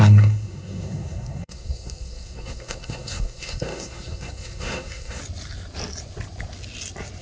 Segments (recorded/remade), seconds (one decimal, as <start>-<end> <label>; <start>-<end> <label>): 0.0-5.2 remade; 5.2-7.2 recorded